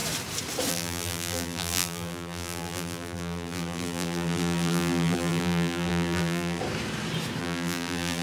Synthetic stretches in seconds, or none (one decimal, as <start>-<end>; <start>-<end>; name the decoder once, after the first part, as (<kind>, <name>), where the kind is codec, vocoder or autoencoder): 0.7-6.6 (vocoder, BigVGAN v2); 7.4-8.2